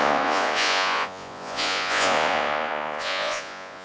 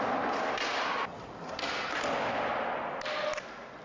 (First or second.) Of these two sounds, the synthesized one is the first